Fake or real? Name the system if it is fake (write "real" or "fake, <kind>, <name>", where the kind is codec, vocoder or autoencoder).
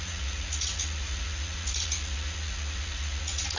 fake, vocoder, Vocos